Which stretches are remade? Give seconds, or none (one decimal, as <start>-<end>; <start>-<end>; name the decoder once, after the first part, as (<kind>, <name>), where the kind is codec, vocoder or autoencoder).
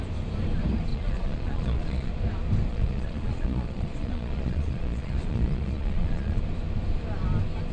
0.9-2.1 (vocoder, Vocos); 2.7-6.4